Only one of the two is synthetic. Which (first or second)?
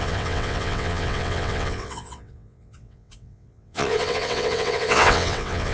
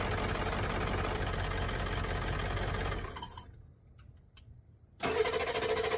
first